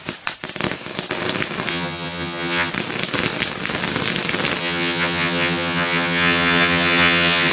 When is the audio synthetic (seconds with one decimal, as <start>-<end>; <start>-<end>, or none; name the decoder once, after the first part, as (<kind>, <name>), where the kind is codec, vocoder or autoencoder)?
1.7-2.7 (vocoder, HiFi-GAN); 4.6-7.5

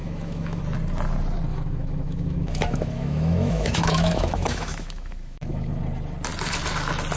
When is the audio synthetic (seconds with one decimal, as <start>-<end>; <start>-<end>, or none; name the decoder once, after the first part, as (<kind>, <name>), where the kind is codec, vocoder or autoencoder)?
0.0-0.6 (autoencoder, DAC-VAE); 1.5-5.8

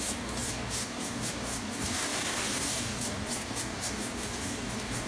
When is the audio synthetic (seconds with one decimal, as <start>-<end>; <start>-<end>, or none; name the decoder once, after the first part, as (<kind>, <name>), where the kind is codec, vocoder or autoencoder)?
0.0-5.1 (codec, DAC)

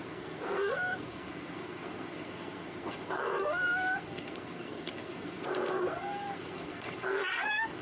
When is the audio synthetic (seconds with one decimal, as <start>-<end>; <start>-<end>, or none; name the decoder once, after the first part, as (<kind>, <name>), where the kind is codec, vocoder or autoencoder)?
0.0-7.8 (codec, SNAC)

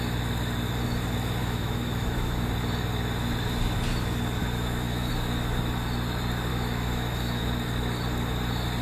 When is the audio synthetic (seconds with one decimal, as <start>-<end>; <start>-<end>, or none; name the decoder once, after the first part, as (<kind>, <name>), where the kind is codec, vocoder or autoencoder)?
1.4-2.5 (autoencoder, DAC-VAE); 4.4-5.1; 6.5-7.4

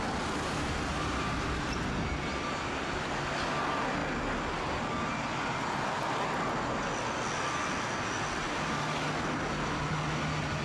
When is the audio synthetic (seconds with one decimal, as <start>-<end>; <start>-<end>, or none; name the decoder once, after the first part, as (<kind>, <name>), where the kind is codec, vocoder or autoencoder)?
none

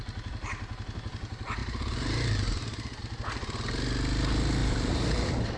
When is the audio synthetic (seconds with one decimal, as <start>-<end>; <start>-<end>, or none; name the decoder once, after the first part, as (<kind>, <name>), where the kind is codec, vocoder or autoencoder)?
1.6-3.0 (vocoder, BigVGAN v2); 4.6-5.6

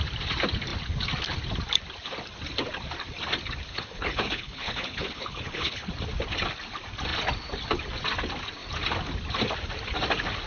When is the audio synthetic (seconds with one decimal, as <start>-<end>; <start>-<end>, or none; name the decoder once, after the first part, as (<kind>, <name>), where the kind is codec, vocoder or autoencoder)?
3.7-5.9 (codec, HILCodec)